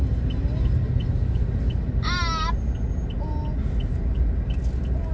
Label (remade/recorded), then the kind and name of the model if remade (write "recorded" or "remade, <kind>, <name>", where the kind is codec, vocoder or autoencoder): recorded